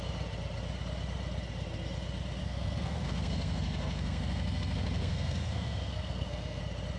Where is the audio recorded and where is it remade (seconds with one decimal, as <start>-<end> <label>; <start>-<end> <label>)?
0.0-2.4 recorded; 2.4-6.6 remade; 6.6-7.0 recorded